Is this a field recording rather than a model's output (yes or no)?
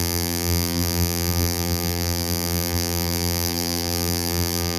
no